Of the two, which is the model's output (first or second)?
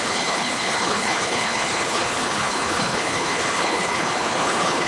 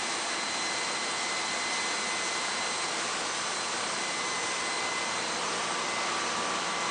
first